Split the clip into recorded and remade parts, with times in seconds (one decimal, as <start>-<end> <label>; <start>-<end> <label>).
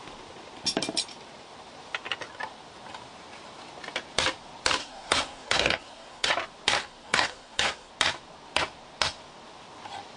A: 0.0-4.8 recorded; 4.8-6.3 remade; 6.3-6.8 recorded; 6.8-7.9 remade; 7.9-10.2 recorded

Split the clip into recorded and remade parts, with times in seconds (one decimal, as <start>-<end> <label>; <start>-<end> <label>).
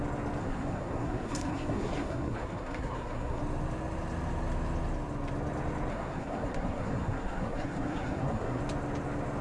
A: 0.0-0.4 recorded; 0.4-3.4 remade; 3.4-5.9 recorded; 5.9-8.6 remade; 8.6-9.4 recorded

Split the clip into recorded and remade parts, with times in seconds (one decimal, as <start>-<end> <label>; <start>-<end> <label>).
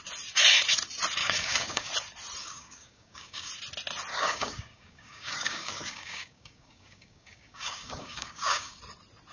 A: 0.0-1.2 recorded; 1.2-1.9 remade; 1.9-2.4 recorded; 2.4-3.5 remade; 3.5-4.1 recorded; 4.1-8.8 remade; 8.8-9.3 recorded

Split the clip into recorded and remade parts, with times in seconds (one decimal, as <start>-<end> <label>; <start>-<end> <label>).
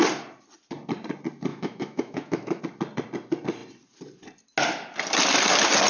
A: 0.0-1.5 recorded; 1.5-2.6 remade; 2.6-5.9 recorded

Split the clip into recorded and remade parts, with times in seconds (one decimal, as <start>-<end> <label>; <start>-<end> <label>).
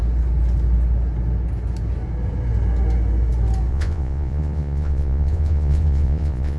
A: 0.0-3.7 recorded; 3.7-6.6 remade